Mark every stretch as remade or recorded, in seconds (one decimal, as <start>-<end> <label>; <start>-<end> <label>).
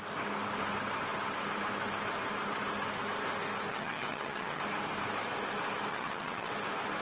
0.0-3.7 recorded; 3.7-4.6 remade; 4.6-5.9 recorded; 5.9-6.5 remade; 6.5-7.0 recorded